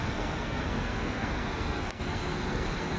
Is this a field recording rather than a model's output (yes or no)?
no